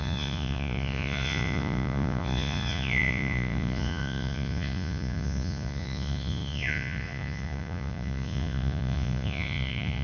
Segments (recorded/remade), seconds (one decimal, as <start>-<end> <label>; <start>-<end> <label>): 0.0-10.0 remade

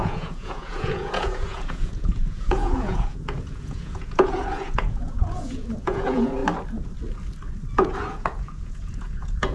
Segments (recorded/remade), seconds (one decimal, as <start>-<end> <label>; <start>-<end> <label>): 0.0-6.4 remade; 6.4-7.7 recorded; 7.7-9.5 remade

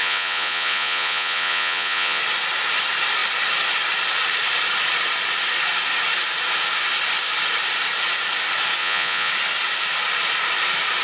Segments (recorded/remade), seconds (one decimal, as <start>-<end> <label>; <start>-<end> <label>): 0.0-2.2 remade; 2.2-8.8 recorded; 8.8-9.3 remade; 9.3-11.0 recorded

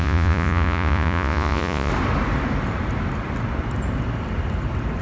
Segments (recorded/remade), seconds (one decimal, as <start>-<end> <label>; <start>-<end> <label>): 0.0-1.9 remade; 1.9-5.0 recorded

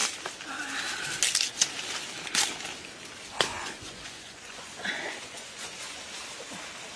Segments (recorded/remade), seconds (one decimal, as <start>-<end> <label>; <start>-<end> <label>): 0.0-3.5 recorded; 3.5-6.0 remade; 6.0-7.0 recorded

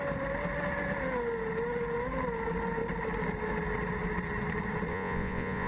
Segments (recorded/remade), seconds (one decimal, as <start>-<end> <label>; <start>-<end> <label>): 0.0-4.9 recorded; 4.9-5.7 remade